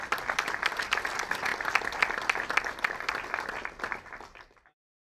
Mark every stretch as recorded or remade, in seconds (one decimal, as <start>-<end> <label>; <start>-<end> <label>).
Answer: 0.0-5.0 recorded